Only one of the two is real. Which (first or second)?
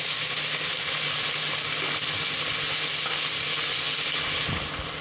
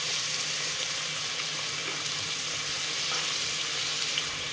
first